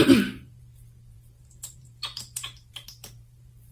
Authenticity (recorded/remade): remade